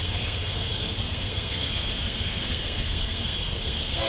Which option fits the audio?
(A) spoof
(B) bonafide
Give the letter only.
A